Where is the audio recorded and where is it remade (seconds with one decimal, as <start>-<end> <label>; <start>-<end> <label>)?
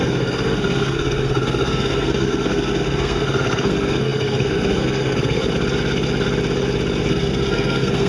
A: 0.0-5.4 remade; 5.4-7.1 recorded; 7.1-8.1 remade